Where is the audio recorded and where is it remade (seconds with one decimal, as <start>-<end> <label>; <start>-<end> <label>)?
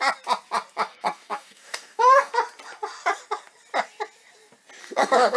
0.0-0.9 recorded; 0.9-2.3 remade; 2.3-4.8 recorded; 4.8-5.4 remade